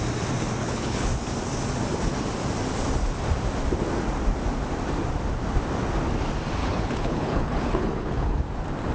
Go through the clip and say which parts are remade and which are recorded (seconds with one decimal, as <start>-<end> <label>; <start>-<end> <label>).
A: 0.0-0.6 recorded; 0.6-1.1 remade; 1.1-6.6 recorded; 6.6-8.4 remade; 8.4-8.9 recorded

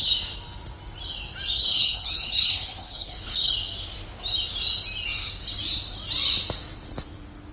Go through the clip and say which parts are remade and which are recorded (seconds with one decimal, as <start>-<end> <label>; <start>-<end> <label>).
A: 0.0-1.6 recorded; 1.6-3.5 remade; 3.5-7.5 recorded

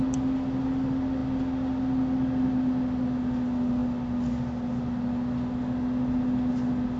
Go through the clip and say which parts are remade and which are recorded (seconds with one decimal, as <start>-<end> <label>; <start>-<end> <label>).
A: 0.0-7.0 recorded

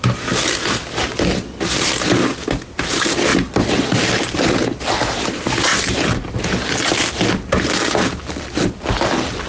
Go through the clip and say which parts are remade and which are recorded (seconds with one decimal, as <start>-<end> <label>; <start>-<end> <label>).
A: 0.0-9.5 recorded

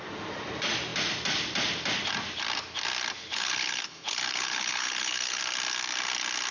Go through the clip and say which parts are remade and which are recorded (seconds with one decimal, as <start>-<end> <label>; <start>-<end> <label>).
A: 0.0-3.2 recorded; 3.2-5.4 remade; 5.4-6.5 recorded

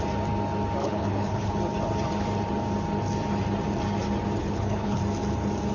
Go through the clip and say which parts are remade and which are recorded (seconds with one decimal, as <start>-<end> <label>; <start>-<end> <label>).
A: 0.0-0.8 recorded; 0.8-1.5 remade; 1.5-4.4 recorded; 4.4-5.0 remade; 5.0-5.7 recorded

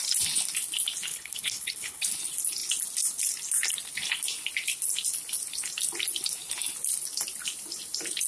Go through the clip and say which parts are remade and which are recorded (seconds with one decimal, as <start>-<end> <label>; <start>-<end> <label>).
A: 0.0-1.1 recorded; 1.1-2.1 remade; 2.1-8.3 recorded

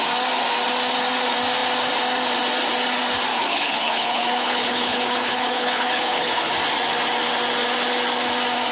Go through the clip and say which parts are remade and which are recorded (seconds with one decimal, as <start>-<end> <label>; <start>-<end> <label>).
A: 0.0-3.3 recorded; 3.3-6.5 remade; 6.5-8.7 recorded